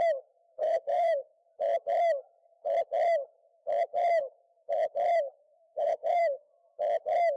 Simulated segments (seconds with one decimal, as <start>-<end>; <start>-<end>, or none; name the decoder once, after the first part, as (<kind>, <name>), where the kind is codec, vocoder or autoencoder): 0.6-1.4 (autoencoder, DAC-VAE); 5.4-6.5